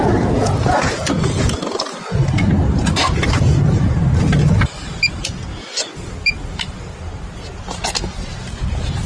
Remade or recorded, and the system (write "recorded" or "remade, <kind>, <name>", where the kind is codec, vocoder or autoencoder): recorded